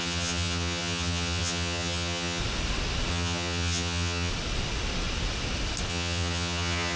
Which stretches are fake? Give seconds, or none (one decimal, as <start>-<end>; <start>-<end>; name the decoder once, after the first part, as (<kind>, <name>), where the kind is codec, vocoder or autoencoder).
0.0-2.4 (vocoder, HiFi-GAN); 3.1-4.3; 5.9-7.0